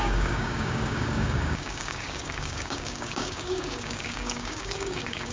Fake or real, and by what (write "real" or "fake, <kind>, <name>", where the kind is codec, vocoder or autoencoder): fake, codec, DAC